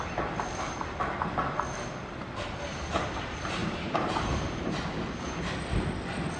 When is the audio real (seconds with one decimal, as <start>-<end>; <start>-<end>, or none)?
0.0-3.6; 4.9-6.4